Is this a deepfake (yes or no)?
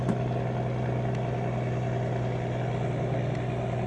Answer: no